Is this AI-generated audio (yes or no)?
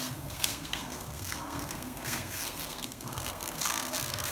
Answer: yes